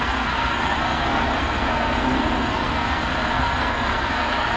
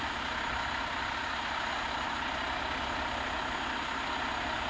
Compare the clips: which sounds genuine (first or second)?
second